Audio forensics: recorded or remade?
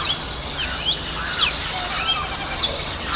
recorded